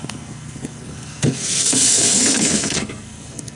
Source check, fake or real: fake